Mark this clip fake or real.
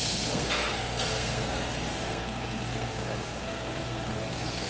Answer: fake